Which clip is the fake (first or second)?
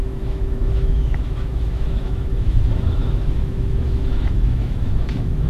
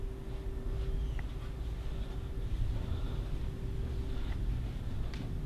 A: first